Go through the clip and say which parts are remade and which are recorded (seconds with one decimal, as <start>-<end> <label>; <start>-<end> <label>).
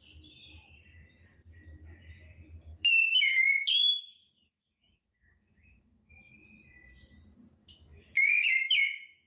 0.0-2.7 recorded; 2.7-6.1 remade; 6.1-7.6 recorded; 7.6-9.3 remade